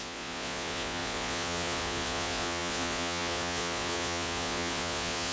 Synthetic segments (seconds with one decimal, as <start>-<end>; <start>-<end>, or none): 0.0-5.3